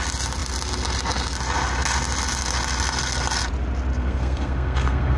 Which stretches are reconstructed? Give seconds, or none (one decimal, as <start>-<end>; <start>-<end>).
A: 3.9-5.2